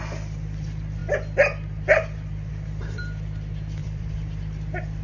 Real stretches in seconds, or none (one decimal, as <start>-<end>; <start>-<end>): 0.0-3.8; 4.4-5.0